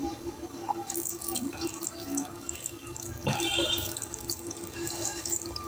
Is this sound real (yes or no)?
no